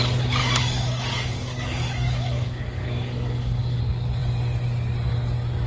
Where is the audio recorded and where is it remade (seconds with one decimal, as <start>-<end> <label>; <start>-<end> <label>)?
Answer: 0.0-0.4 recorded; 0.4-3.8 remade; 3.8-5.7 recorded